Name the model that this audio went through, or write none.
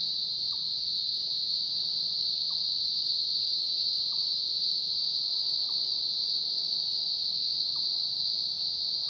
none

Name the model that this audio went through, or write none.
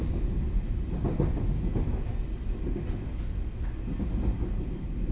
none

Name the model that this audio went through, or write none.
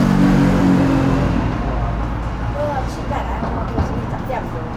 none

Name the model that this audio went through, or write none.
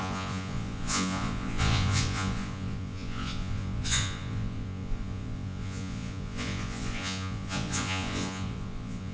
vocoder, Vocos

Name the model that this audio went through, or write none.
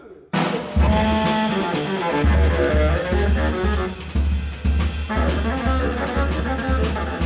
none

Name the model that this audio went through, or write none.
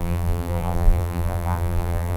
vocoder, BigVGAN v2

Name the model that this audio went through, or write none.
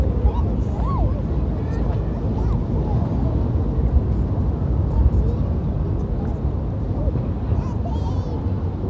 none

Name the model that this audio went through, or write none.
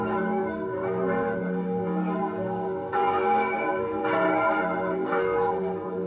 codec, SNAC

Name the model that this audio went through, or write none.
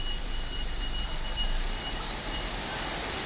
vocoder, BigVGAN v2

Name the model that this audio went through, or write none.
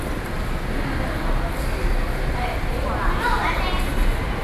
none